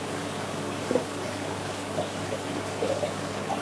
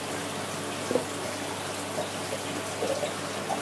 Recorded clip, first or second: second